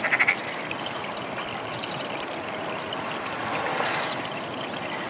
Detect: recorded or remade recorded